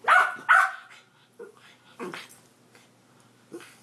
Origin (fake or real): real